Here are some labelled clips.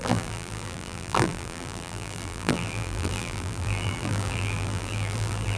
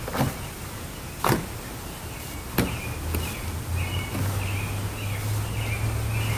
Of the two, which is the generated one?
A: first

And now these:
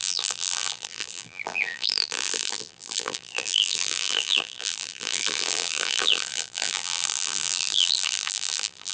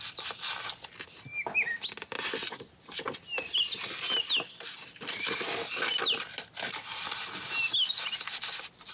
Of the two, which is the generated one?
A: first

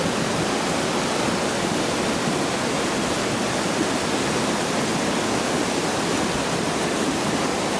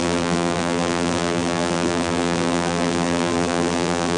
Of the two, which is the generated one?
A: second